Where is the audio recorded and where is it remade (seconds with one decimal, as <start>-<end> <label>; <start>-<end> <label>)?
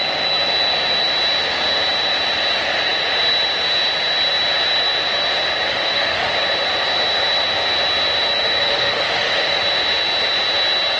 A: 0.0-5.7 recorded; 5.7-6.3 remade; 6.3-8.6 recorded; 8.6-9.6 remade; 9.6-11.0 recorded